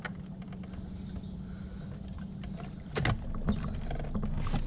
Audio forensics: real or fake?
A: real